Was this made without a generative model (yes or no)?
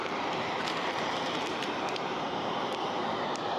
no